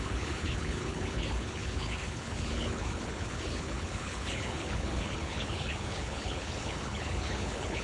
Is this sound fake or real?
fake